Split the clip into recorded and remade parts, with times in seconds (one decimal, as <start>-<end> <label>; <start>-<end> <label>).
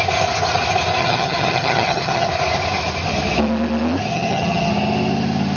0.0-1.0 recorded; 1.0-2.3 remade; 2.3-4.1 recorded; 4.1-4.7 remade; 4.7-5.6 recorded